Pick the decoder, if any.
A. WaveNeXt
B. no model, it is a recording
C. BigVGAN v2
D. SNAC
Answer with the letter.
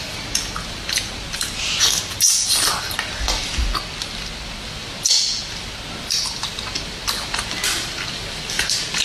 B